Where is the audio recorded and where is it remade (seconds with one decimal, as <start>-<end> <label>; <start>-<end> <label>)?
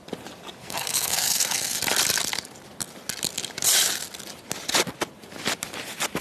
0.0-0.6 recorded; 0.6-1.8 remade; 1.8-6.2 recorded